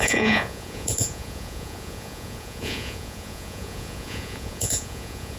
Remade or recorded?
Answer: remade